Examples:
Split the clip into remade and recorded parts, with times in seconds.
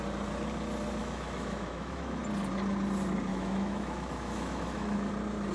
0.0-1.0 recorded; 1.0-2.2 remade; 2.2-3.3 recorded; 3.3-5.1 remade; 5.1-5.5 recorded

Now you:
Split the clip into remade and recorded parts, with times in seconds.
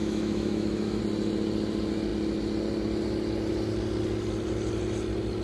0.0-1.0 remade; 1.0-5.4 recorded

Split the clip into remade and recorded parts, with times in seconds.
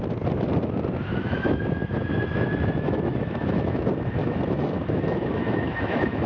0.0-1.1 recorded; 1.1-3.8 remade; 3.8-4.2 recorded; 4.2-6.3 remade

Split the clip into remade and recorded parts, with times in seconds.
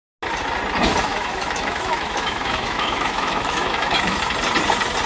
0.0-1.1 recorded; 1.1-4.2 remade; 4.2-5.1 recorded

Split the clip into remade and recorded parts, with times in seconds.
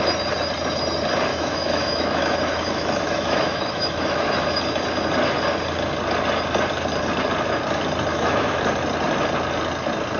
0.0-1.3 recorded; 1.3-4.6 remade; 4.6-8.1 recorded; 8.1-8.6 remade; 8.6-10.2 recorded